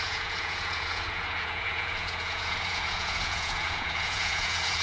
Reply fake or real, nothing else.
fake